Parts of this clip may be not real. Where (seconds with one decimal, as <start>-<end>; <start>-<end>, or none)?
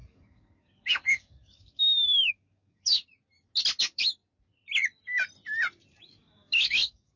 0.0-3.0; 3.8-4.2; 6.0-7.2